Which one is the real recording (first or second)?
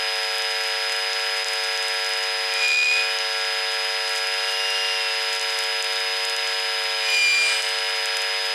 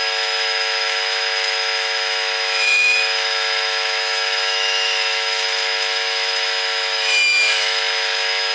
first